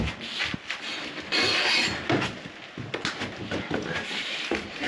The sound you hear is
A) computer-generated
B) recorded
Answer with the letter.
B